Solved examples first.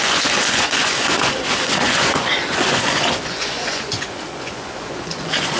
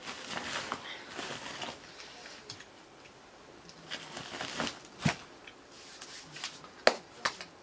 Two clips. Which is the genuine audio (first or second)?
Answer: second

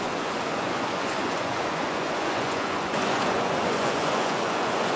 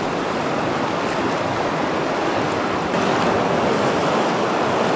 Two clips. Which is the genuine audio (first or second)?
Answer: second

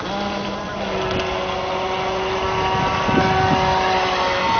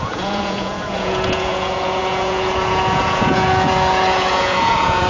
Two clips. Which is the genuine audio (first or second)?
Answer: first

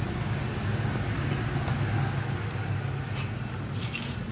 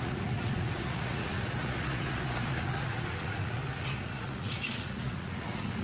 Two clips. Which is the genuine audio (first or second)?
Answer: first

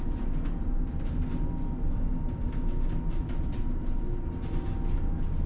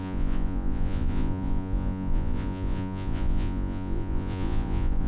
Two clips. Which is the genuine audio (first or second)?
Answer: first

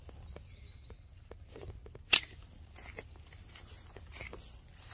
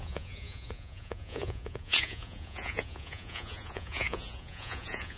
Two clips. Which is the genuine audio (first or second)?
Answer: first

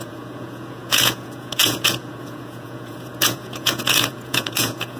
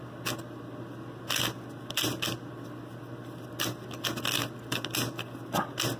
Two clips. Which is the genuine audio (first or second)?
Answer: second